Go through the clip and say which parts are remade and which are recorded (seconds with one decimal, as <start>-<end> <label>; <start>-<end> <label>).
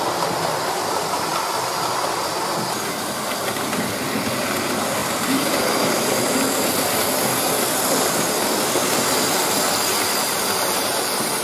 0.0-5.0 recorded; 5.0-7.0 remade; 7.0-11.4 recorded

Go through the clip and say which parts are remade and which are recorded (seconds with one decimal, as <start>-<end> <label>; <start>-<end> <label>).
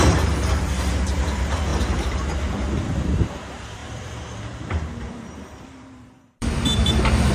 0.0-7.3 remade